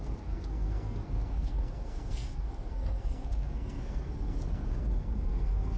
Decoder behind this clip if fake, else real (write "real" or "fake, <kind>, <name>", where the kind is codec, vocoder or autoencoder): fake, codec, SNAC